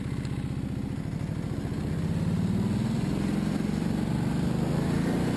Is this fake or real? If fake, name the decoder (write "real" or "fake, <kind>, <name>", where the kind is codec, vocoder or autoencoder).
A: real